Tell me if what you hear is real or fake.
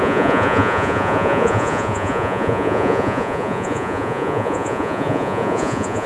fake